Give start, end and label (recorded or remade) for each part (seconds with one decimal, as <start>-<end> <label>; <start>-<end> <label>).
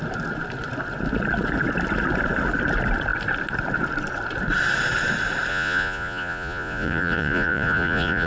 0.0-5.5 recorded; 5.5-8.3 remade